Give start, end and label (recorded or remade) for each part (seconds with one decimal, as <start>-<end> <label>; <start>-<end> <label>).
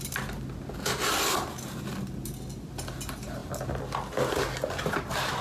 0.0-5.4 recorded